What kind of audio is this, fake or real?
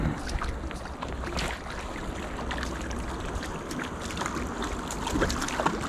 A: real